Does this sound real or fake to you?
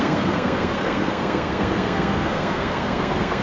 fake